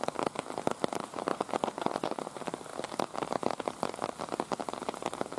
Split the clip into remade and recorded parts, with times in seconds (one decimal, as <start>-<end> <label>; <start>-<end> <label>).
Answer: 0.0-1.3 recorded; 1.3-2.3 remade; 2.3-5.4 recorded